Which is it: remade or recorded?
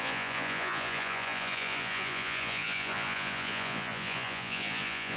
remade